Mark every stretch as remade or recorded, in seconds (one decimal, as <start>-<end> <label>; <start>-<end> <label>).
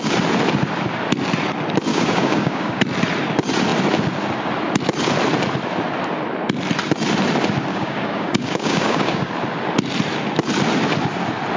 0.0-1.9 recorded; 1.9-2.8 remade; 2.8-7.7 recorded; 7.7-9.3 remade; 9.3-11.6 recorded